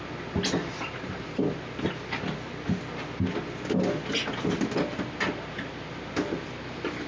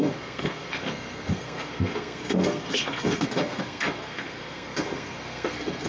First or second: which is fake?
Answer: second